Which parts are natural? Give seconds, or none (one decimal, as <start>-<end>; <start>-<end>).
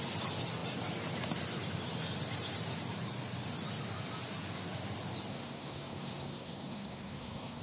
0.0-5.3